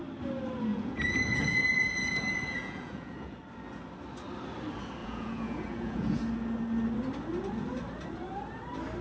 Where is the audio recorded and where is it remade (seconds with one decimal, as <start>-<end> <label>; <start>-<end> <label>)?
0.0-0.7 recorded; 0.7-3.4 remade; 3.4-5.0 recorded; 5.0-6.2 remade; 6.2-9.0 recorded